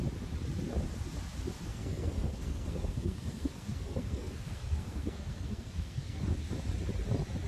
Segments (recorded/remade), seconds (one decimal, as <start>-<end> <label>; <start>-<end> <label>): 0.0-1.7 recorded; 1.7-6.2 remade; 6.2-7.5 recorded